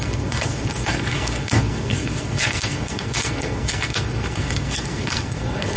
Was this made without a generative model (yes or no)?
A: no